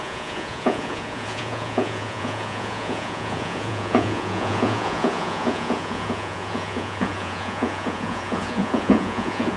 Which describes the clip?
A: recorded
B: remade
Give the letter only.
B